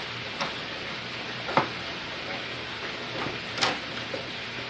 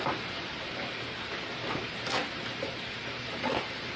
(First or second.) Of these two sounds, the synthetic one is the second